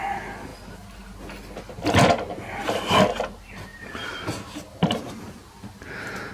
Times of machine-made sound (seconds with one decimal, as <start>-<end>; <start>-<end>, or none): none